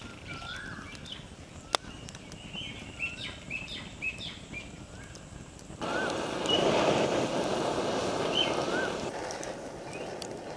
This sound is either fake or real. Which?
real